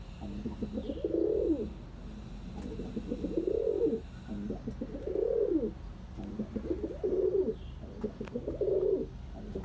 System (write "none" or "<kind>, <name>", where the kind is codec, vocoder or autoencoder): none